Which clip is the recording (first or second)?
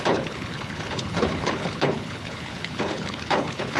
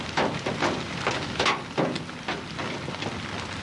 second